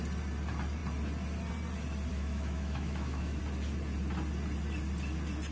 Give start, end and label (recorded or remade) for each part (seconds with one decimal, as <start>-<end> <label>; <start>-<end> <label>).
0.0-2.1 recorded; 2.1-3.4 remade; 3.4-5.5 recorded